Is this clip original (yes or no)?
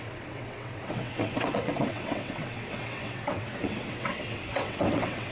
no